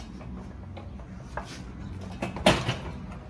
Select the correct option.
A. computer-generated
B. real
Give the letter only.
B